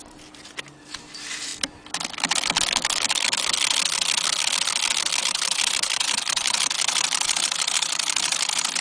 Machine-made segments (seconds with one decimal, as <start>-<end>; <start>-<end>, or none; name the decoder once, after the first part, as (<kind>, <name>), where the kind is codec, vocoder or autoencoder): 0.0-1.5 (vocoder, BigVGAN v2); 5.2-8.8